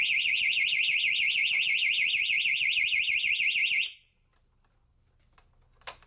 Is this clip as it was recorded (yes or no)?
yes